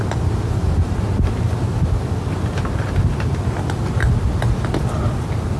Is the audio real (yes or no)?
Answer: yes